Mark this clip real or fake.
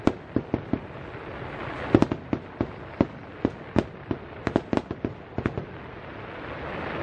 real